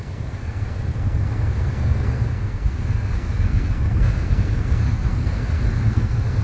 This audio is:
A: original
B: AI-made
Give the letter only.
B